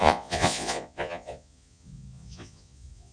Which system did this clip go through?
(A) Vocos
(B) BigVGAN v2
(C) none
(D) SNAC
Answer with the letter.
A